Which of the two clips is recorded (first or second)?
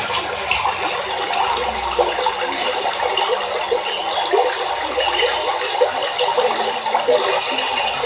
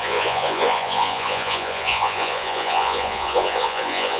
first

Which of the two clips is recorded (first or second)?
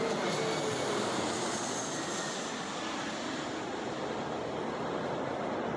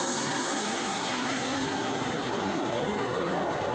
first